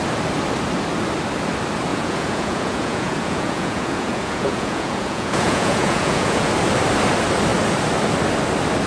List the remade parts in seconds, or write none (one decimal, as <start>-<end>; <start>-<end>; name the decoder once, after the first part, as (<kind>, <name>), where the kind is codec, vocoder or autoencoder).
1.9-6.5 (vocoder, Vocos)